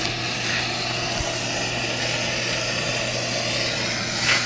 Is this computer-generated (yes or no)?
no